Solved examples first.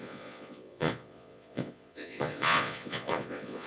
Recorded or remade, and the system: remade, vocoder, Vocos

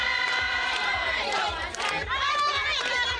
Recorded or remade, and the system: remade, vocoder, BigVGAN v2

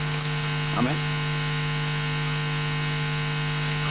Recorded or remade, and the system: recorded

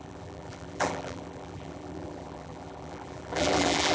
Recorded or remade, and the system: remade, vocoder, BigVGAN v2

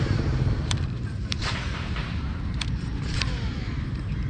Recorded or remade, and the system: remade, vocoder, BigVGAN v2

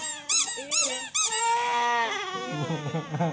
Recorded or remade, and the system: recorded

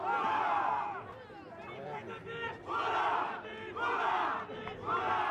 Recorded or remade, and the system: recorded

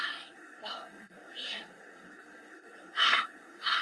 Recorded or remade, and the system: remade, codec, SNAC